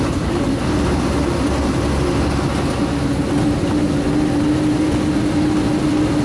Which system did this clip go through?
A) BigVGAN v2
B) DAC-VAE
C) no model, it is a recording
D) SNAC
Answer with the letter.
C